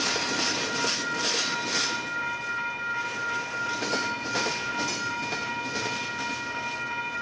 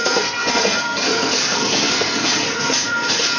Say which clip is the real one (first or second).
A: first